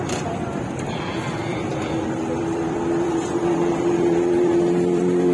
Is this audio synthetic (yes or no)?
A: yes